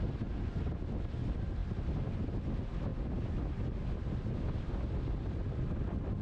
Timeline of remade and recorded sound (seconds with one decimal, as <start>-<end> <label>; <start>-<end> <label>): 0.0-6.2 recorded